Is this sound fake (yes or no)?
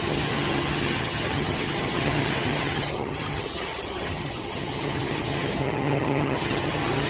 yes